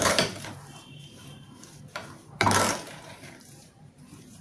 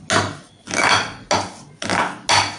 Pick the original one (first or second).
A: second